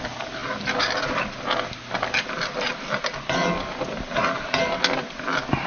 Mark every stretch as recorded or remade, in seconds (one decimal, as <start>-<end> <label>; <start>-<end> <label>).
0.0-5.7 recorded